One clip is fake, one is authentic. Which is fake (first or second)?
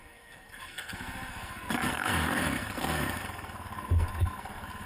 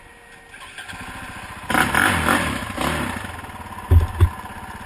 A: first